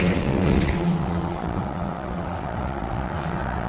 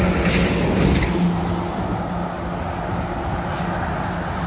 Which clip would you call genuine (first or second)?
second